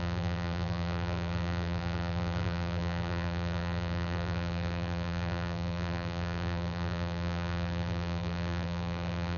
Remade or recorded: remade